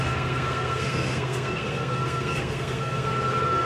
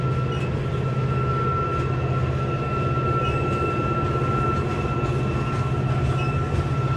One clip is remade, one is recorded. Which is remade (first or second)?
first